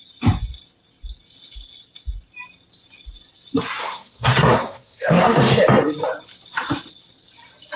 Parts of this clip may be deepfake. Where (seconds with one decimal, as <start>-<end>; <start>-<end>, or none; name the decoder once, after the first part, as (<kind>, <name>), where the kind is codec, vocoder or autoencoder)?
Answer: 3.8-5.4 (codec, SNAC)